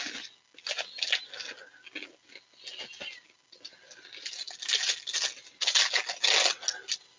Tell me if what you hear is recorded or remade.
recorded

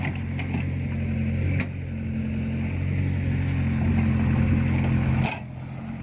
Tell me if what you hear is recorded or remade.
recorded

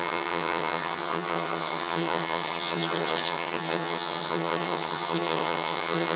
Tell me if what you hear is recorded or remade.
remade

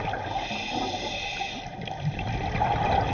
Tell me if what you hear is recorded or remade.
recorded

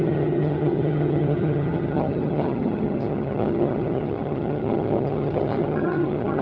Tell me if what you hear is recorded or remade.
remade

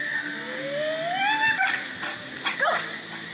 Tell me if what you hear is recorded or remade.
recorded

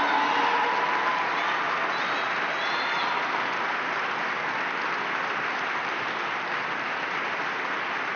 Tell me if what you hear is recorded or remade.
recorded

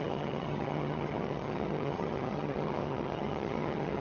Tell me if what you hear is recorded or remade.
remade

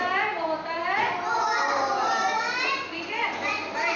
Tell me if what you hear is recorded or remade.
recorded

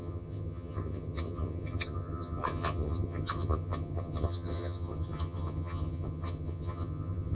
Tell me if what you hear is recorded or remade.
remade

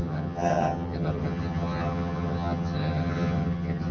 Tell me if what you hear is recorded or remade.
remade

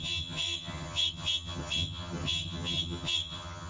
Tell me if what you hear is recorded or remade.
remade